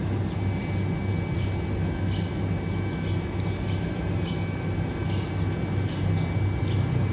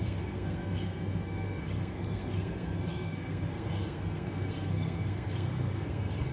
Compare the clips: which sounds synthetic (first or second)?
second